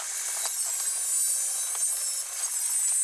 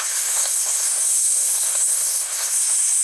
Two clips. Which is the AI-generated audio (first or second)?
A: second